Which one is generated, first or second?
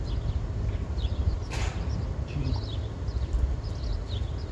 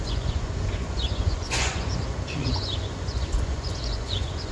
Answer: second